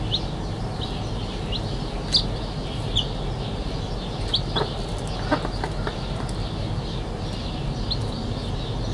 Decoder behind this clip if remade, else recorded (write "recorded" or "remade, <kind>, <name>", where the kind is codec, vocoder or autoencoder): recorded